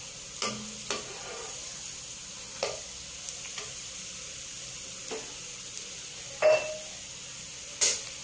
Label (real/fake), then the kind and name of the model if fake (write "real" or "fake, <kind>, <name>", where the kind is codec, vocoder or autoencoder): real